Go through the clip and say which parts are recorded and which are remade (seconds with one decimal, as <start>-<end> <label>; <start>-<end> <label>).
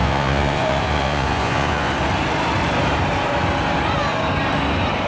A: 0.0-1.9 remade; 1.9-5.1 recorded